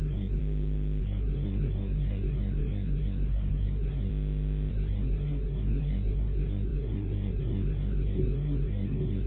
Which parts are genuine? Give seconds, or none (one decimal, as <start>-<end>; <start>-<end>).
0.4-1.0; 4.1-4.7